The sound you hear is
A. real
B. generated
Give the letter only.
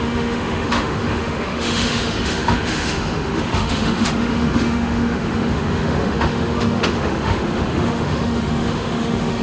B